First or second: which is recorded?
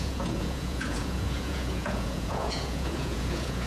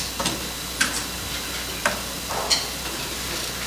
second